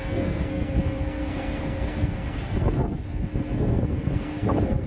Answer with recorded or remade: remade